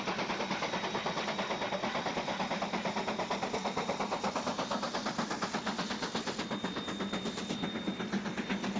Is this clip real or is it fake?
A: real